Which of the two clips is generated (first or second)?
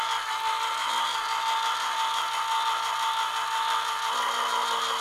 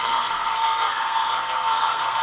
second